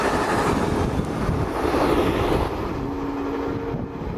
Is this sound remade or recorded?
recorded